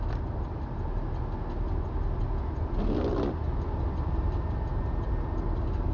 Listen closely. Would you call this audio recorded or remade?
recorded